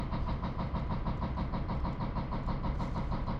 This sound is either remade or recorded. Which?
recorded